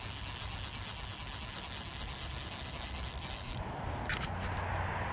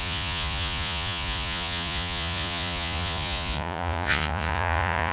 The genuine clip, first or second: first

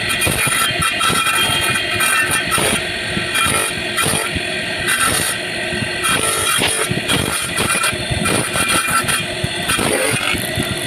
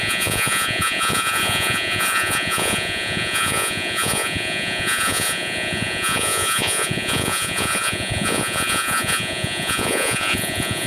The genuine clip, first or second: first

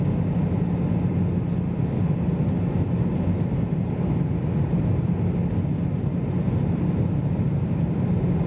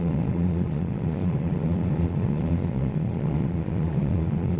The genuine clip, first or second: first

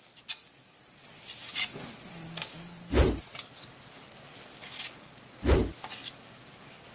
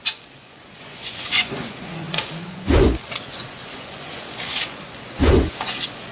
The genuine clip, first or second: first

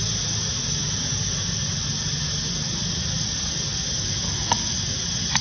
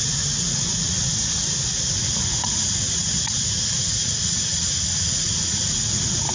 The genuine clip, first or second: first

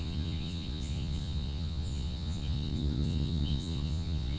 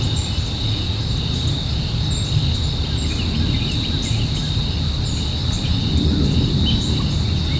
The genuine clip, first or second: second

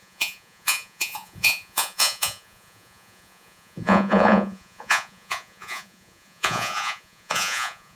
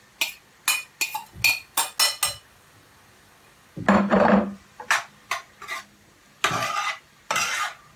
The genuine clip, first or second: second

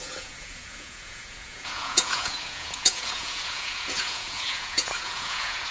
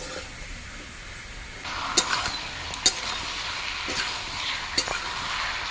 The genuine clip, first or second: second